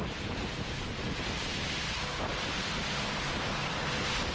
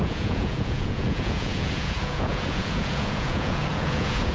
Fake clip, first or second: second